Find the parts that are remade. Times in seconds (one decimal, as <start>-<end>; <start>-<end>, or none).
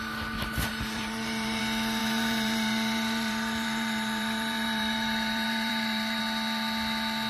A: 0.7-1.6; 2.0-6.2